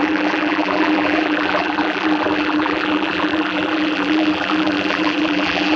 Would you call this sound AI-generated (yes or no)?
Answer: yes